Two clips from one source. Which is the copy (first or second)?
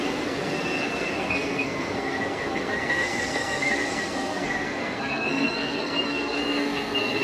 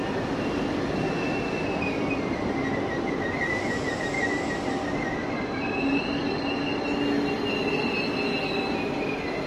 first